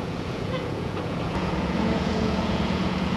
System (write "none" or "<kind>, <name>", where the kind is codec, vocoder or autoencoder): vocoder, Vocos